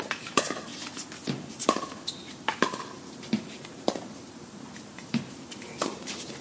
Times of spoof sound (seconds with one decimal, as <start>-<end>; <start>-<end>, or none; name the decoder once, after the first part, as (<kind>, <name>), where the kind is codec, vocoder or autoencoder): 0.0-0.7 (vocoder, BigVGAN v2); 3.4-6.4